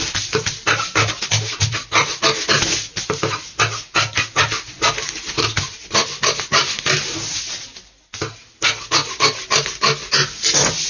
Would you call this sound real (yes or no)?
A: yes